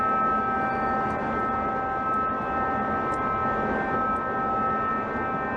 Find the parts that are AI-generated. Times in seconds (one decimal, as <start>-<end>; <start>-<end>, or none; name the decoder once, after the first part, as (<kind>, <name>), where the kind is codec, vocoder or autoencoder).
none